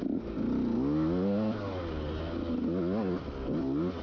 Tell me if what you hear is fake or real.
real